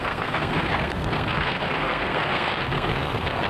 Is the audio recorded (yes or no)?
no